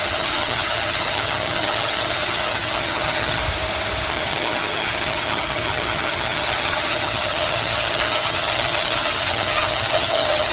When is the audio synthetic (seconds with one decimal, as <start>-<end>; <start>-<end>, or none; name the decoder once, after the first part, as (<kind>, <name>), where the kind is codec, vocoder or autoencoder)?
0.0-3.4 (vocoder, HiFi-GAN); 4.1-10.5